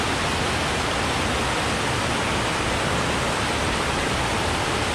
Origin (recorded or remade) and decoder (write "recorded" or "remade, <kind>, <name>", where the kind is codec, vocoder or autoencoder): recorded